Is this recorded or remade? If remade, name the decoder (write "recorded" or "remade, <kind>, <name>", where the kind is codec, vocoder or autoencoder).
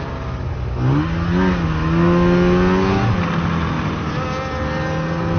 recorded